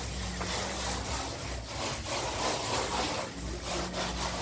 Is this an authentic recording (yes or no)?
yes